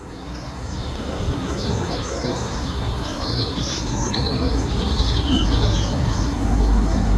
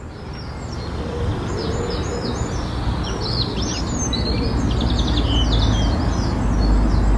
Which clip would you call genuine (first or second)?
second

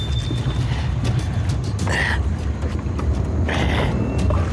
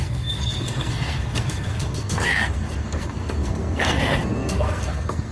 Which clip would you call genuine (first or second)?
first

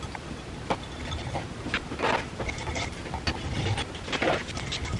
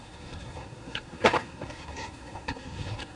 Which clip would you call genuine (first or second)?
first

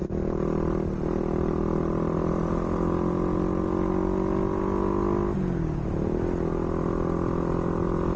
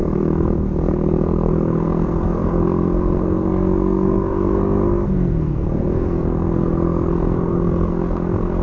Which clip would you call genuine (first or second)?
first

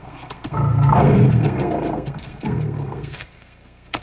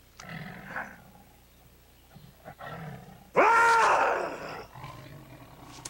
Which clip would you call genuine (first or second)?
second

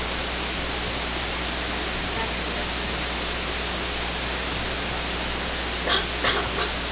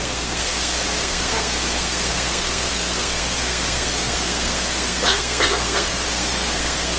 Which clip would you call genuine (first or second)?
first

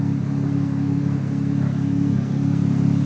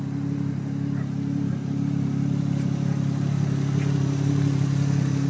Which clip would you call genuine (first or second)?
second